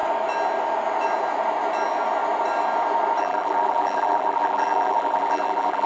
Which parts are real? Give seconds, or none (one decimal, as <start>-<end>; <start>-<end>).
0.0-3.2